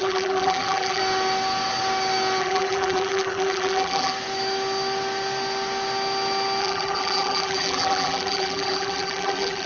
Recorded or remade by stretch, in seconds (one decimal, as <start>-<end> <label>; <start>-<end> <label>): 0.0-1.0 remade; 1.0-2.4 recorded; 2.4-4.1 remade; 4.1-6.6 recorded; 6.6-9.7 remade